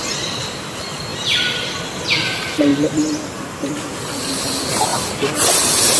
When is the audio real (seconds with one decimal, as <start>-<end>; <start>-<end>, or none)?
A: 0.0-6.0